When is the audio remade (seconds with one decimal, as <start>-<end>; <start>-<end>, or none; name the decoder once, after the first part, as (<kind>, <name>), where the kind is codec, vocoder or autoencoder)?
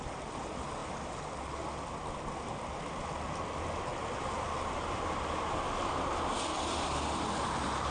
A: none